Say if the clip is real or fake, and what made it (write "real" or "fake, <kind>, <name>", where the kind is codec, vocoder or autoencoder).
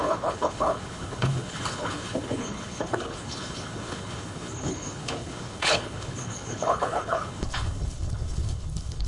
fake, codec, HILCodec